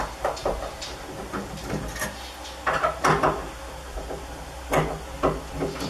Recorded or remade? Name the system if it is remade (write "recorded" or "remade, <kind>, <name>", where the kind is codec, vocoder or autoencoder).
recorded